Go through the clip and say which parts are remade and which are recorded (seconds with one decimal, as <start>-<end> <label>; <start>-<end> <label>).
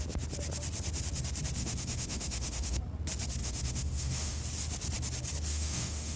0.0-1.6 recorded; 1.6-2.8 remade; 2.8-3.4 recorded; 3.4-4.4 remade; 4.4-5.5 recorded; 5.5-6.2 remade